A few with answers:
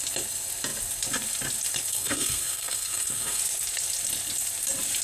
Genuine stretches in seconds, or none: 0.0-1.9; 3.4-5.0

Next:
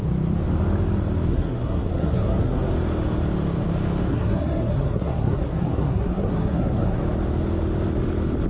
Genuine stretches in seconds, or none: 0.0-1.3; 2.6-4.1; 7.0-8.5

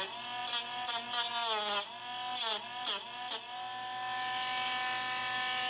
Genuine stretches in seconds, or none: 0.0-5.7

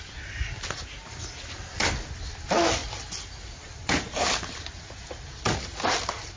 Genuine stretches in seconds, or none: 0.0-6.4

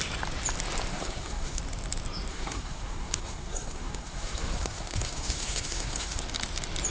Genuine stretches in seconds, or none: 0.0-0.9; 1.6-2.3; 6.2-6.9

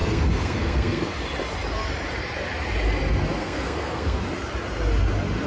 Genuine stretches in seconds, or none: 1.1-3.4; 4.2-5.5

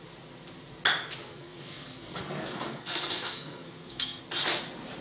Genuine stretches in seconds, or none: 0.0-1.2; 4.2-5.0

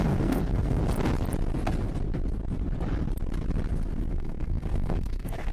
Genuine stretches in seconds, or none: 0.8-4.1